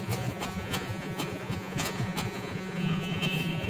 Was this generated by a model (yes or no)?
yes